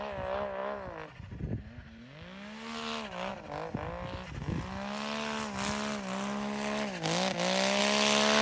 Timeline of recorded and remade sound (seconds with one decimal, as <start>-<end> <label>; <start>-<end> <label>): 0.0-8.4 recorded